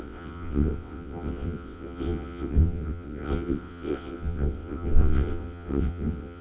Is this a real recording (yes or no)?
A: no